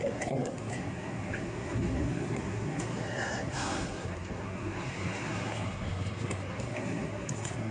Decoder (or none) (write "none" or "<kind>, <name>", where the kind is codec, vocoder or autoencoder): codec, SNAC